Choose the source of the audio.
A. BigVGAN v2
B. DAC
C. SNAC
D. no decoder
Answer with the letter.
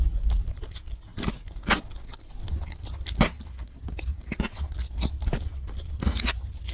D